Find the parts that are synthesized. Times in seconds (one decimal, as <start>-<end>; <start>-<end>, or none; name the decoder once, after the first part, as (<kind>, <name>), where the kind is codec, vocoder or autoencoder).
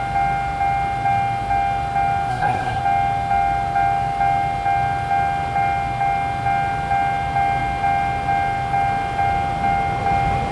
2.3-2.8 (codec, SNAC)